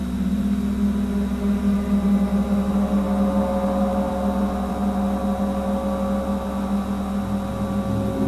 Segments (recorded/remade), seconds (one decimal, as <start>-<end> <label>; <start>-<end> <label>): 0.0-8.3 recorded